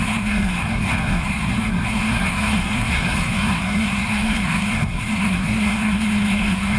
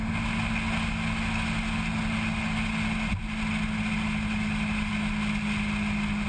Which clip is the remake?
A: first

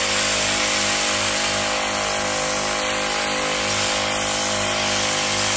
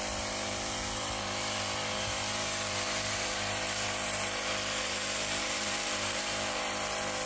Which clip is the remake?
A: second